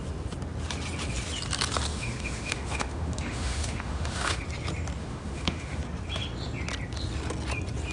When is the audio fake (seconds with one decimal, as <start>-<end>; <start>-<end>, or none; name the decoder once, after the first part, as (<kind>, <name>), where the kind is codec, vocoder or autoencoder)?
1.9-4.4 (autoencoder, DAC-VAE); 5.0-5.8